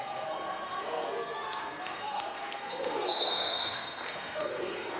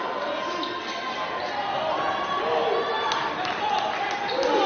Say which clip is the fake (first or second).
first